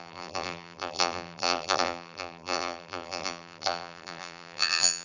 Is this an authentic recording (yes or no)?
no